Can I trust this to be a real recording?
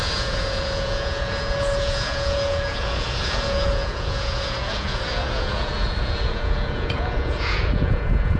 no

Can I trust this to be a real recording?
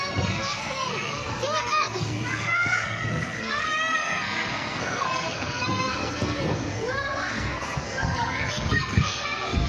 no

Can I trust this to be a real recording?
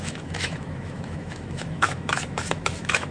no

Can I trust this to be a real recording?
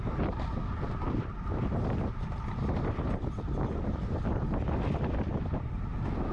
yes